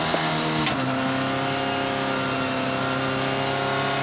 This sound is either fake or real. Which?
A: real